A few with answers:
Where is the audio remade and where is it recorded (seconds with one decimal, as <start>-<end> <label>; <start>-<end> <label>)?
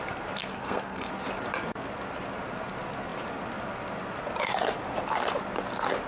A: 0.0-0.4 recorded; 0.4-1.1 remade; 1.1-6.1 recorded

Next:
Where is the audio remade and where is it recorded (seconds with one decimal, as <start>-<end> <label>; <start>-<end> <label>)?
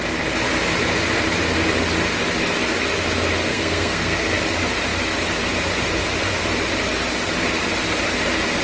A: 0.0-3.5 recorded; 3.5-4.4 remade; 4.4-8.6 recorded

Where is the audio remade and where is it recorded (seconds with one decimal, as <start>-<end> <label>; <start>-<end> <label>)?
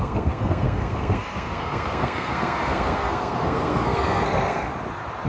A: 0.0-4.7 remade; 4.7-5.3 recorded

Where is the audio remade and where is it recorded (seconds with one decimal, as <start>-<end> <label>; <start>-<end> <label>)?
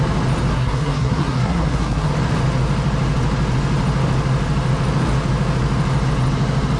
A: 0.0-0.5 recorded; 0.5-2.1 remade; 2.1-6.8 recorded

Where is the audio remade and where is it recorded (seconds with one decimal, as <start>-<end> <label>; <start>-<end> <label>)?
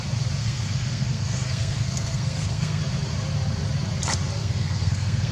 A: 0.0-0.4 recorded; 0.4-2.8 remade; 2.8-4.4 recorded; 4.4-5.3 remade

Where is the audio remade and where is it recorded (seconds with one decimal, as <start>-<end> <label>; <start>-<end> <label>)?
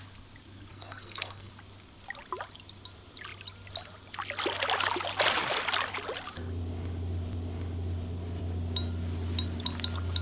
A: 0.0-0.7 recorded; 0.7-1.5 remade; 1.5-10.2 recorded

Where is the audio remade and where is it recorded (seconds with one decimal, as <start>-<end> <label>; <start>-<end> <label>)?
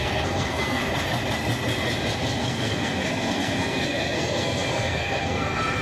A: 0.0-0.8 remade; 0.8-2.4 recorded; 2.4-5.8 remade